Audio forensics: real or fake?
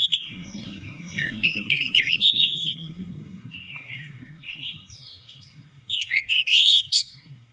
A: fake